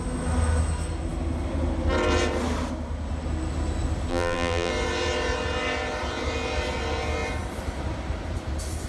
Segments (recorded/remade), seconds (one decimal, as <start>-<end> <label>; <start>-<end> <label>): 0.0-4.1 recorded; 4.1-4.7 remade; 4.7-8.9 recorded